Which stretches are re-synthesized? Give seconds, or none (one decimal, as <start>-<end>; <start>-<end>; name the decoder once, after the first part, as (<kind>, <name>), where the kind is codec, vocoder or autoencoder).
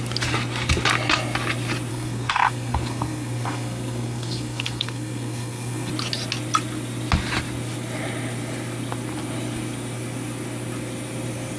1.9-5.9 (codec, SNAC)